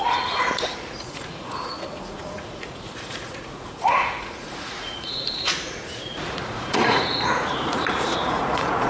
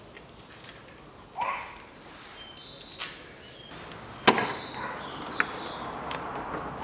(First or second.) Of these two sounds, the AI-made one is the first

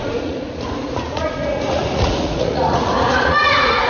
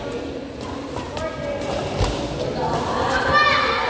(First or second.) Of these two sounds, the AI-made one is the first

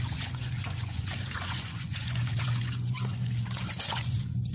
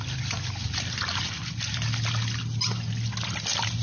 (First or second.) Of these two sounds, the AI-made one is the first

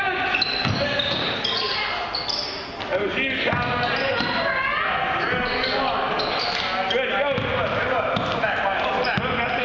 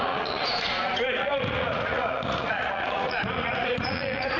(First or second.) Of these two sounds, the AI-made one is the second